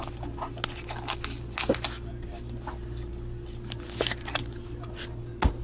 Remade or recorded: recorded